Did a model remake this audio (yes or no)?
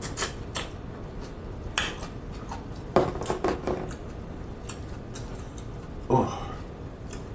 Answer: no